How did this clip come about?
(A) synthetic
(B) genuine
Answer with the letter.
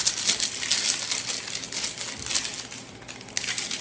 B